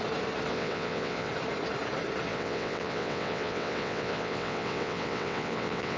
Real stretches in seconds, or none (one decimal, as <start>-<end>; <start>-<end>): 0.0-0.5; 1.3-2.3